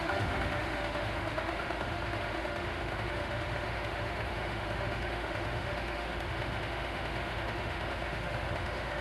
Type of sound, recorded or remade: remade